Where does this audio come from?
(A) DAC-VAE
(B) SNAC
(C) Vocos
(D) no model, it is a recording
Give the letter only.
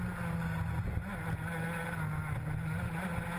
D